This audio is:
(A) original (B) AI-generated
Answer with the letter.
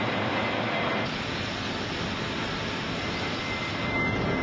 A